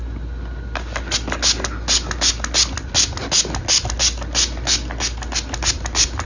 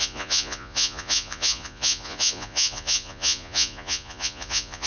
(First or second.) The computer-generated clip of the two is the second